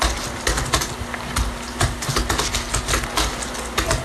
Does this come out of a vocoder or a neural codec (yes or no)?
no